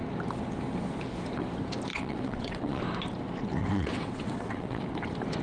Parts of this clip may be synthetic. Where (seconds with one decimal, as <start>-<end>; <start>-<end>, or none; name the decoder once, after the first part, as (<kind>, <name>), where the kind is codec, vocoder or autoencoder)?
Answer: 1.9-2.8 (vocoder, WaveNeXt); 3.6-4.8